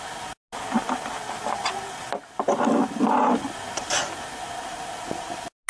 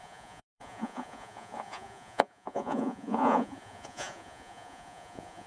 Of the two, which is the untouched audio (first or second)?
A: first